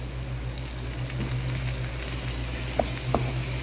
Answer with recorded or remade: recorded